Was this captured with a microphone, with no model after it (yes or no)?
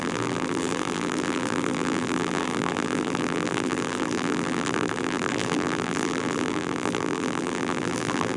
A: no